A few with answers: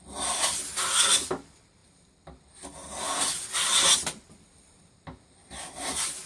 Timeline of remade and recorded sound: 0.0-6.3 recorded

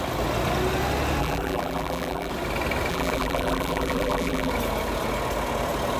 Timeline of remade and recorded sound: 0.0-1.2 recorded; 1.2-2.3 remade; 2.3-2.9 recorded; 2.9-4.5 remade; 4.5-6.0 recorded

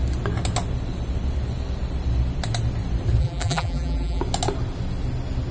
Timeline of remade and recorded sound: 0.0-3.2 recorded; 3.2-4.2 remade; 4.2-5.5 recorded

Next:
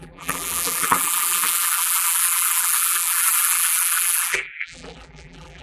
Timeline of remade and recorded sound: 0.0-5.6 remade